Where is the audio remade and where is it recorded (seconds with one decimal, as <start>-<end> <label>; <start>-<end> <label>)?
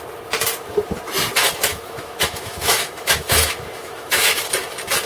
0.0-1.7 recorded; 1.7-4.4 remade; 4.4-5.1 recorded